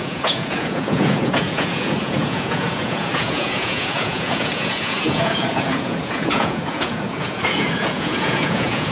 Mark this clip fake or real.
fake